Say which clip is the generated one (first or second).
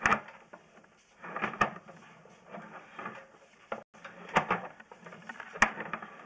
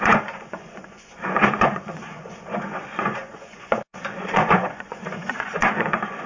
second